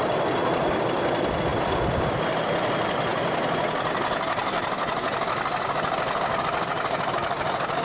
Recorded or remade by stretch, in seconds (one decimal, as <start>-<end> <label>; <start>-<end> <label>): 0.0-7.8 recorded